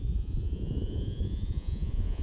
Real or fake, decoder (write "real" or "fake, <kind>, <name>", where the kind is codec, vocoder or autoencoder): fake, vocoder, Vocos